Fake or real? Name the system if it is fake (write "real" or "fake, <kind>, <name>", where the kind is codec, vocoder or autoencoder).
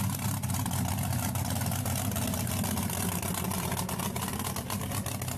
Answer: real